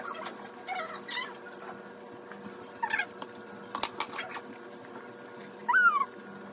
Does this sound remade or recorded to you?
recorded